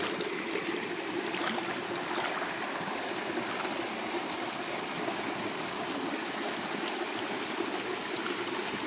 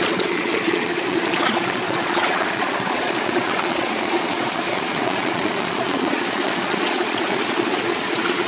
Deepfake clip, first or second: second